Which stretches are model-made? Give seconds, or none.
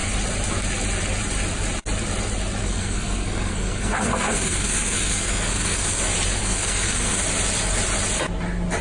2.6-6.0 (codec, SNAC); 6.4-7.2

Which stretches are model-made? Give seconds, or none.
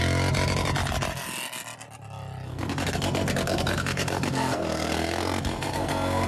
2.5-6.3 (codec, SNAC)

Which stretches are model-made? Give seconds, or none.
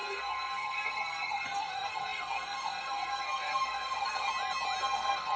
0.0-4.3 (codec, SNAC); 4.8-5.4